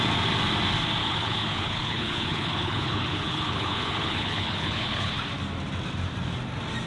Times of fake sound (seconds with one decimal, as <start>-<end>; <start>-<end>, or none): 1.0-5.1